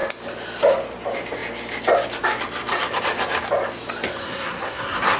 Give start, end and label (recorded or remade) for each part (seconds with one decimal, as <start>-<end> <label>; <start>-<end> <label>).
0.0-4.2 recorded; 4.2-5.2 remade